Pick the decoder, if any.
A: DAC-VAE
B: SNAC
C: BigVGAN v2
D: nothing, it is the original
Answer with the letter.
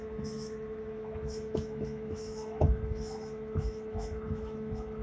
A